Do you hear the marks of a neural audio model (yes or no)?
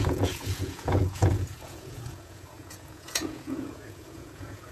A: yes